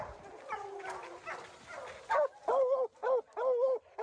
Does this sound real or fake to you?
real